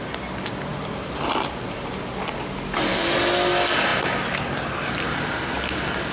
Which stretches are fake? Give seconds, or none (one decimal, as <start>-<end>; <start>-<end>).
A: none